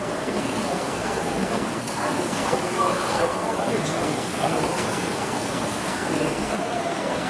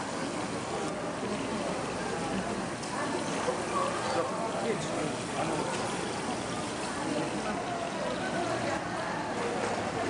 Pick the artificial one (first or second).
first